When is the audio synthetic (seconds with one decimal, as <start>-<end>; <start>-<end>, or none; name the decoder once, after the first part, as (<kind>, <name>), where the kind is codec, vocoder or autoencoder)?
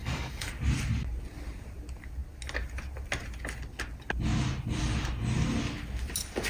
0.0-0.5 (codec, DAC)